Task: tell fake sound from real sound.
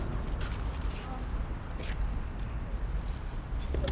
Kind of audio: real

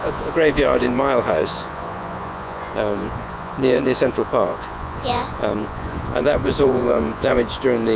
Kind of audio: fake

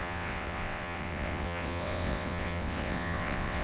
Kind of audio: fake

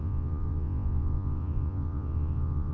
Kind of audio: fake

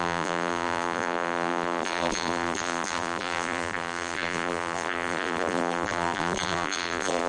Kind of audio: fake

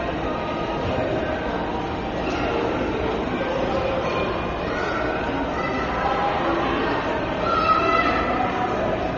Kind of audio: real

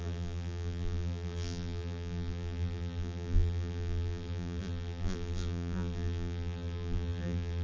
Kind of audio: fake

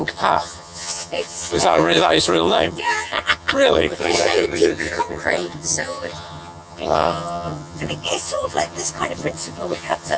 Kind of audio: fake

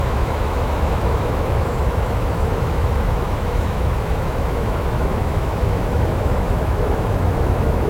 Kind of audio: fake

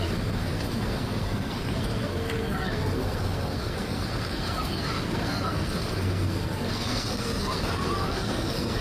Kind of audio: fake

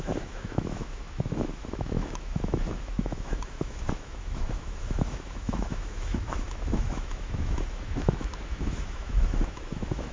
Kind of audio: fake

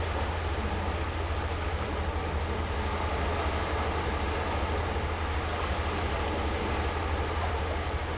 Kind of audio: real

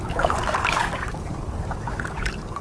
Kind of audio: fake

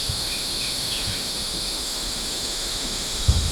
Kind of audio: fake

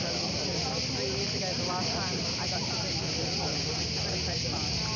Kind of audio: real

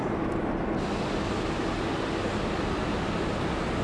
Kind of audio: real